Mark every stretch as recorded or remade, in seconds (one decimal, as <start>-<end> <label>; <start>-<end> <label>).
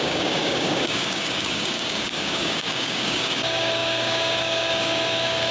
0.0-5.5 remade